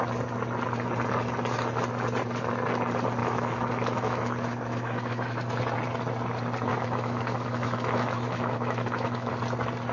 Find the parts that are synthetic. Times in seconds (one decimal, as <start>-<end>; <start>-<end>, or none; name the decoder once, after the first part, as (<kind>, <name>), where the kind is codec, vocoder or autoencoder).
3.2-5.4 (autoencoder, DAC-VAE); 6.7-9.3